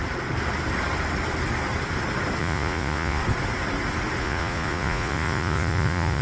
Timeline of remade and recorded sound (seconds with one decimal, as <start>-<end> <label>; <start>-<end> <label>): 0.0-2.4 recorded; 2.4-3.2 remade; 3.2-4.2 recorded; 4.2-6.2 remade

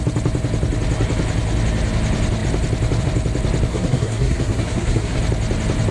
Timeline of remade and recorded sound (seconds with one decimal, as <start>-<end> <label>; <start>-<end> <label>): 0.0-3.7 recorded; 3.7-5.2 remade; 5.2-5.9 recorded

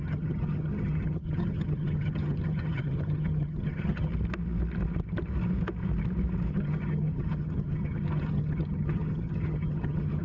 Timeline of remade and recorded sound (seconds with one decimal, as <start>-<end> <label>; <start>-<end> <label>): 0.0-4.1 remade; 4.1-6.5 recorded; 6.5-10.2 remade

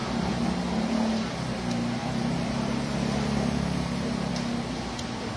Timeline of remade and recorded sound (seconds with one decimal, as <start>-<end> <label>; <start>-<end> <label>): 0.0-0.6 remade; 0.6-2.0 recorded; 2.0-4.3 remade; 4.3-5.4 recorded